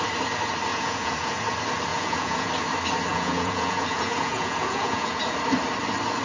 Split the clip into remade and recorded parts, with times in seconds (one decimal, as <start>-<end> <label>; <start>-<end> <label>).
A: 0.0-0.7 recorded; 0.7-1.4 remade; 1.4-1.9 recorded; 1.9-2.5 remade; 2.5-3.1 recorded; 3.1-5.2 remade; 5.2-6.2 recorded